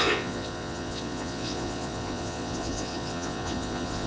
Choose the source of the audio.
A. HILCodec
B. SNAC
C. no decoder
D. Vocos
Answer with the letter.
D